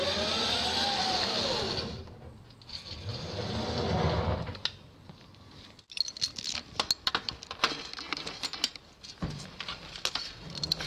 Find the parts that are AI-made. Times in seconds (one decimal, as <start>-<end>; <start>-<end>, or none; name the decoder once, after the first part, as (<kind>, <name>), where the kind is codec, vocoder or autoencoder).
none